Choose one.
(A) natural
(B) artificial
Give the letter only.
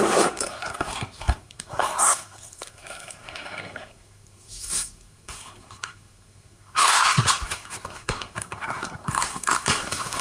B